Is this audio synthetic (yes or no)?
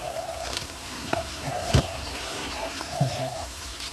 yes